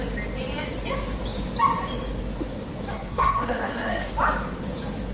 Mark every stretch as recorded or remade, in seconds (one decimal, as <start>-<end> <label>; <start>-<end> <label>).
0.0-2.9 recorded; 2.9-4.1 remade; 4.1-5.1 recorded